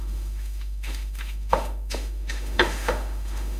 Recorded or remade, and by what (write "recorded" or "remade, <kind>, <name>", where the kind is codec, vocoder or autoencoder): remade, autoencoder, DAC-VAE